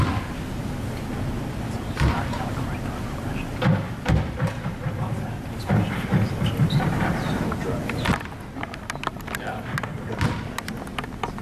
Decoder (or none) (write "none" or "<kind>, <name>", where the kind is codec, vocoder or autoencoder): none